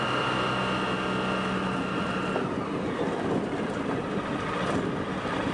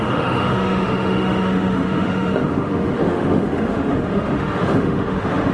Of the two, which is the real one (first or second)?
first